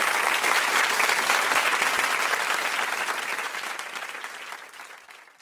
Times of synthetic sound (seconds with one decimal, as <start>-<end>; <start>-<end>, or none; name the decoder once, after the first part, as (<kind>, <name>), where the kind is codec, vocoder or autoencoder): none